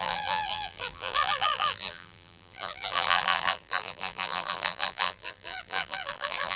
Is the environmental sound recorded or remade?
remade